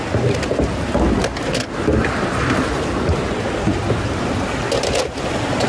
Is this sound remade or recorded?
recorded